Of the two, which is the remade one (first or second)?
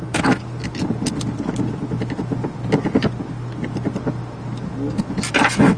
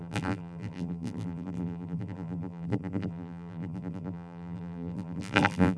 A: second